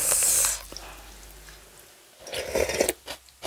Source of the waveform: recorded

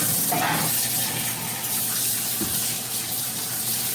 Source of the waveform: recorded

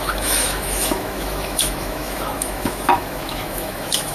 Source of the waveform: remade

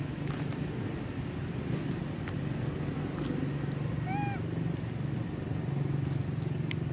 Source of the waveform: recorded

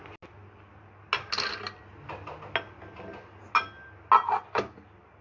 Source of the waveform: recorded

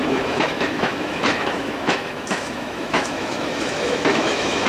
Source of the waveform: remade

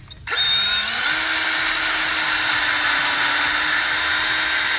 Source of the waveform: recorded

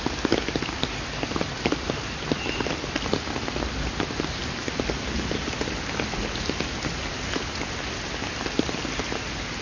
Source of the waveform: recorded